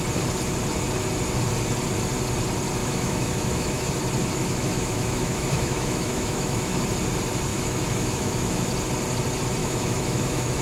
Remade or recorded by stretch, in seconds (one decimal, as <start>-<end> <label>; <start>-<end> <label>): 0.0-2.8 recorded; 2.8-3.9 remade; 3.9-4.3 recorded; 4.3-6.8 remade; 6.8-7.5 recorded; 7.5-8.7 remade; 8.7-9.6 recorded; 9.6-10.6 remade